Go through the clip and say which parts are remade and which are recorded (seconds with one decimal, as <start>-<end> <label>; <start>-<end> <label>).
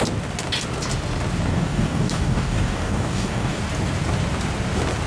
0.0-1.5 recorded; 1.5-3.6 remade; 3.6-5.1 recorded